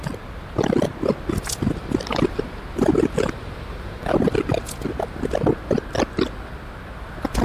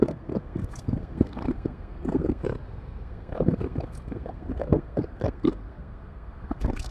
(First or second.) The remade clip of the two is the second